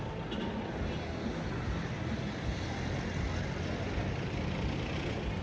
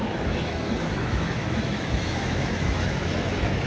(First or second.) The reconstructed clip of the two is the second